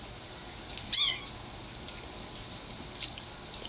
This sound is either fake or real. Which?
real